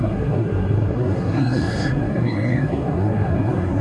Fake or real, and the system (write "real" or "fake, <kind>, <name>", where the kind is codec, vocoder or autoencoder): fake, codec, SNAC